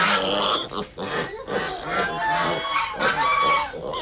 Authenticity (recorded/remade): recorded